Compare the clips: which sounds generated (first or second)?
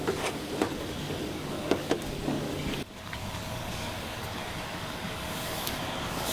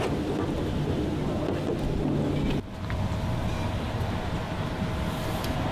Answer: first